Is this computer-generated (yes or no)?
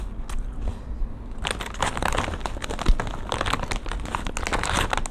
no